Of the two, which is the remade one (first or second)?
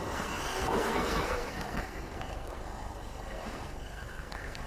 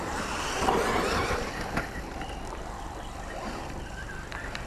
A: first